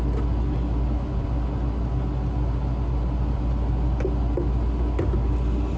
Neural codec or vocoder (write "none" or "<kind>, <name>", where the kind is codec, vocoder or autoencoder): none